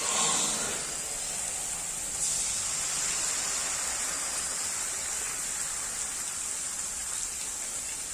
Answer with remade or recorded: recorded